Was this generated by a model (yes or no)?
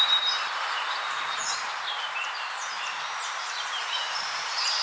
yes